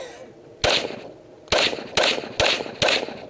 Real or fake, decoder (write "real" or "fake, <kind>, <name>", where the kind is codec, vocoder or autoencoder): real